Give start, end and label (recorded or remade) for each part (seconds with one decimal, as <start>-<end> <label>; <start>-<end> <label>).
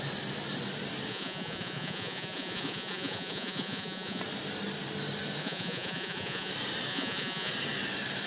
0.0-1.1 recorded; 1.1-4.2 remade; 4.2-5.4 recorded; 5.4-6.5 remade; 6.5-6.9 recorded; 6.9-7.5 remade; 7.5-8.3 recorded